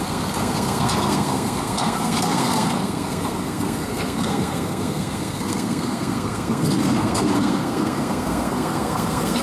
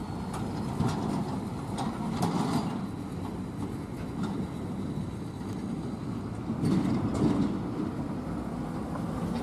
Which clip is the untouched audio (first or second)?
second